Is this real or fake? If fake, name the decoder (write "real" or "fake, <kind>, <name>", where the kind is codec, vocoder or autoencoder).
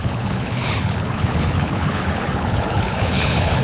fake, codec, HILCodec